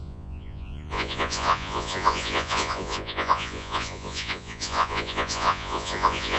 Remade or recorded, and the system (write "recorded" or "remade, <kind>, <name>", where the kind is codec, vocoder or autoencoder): remade, vocoder, Vocos